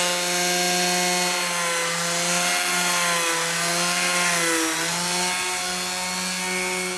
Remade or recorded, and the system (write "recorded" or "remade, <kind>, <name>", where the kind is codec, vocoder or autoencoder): recorded